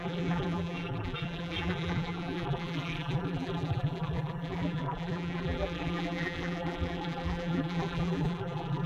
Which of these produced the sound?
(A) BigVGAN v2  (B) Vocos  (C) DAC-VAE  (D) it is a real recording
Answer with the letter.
A